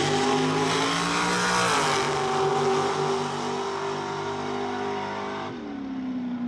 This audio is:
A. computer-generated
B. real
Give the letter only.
B